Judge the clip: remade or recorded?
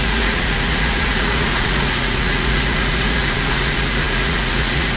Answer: remade